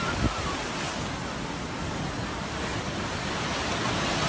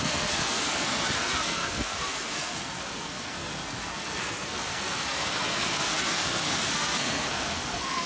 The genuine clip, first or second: first